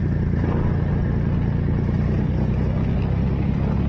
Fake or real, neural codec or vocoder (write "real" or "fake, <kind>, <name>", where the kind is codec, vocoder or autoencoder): real